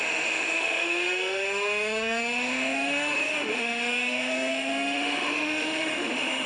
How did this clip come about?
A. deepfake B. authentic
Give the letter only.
A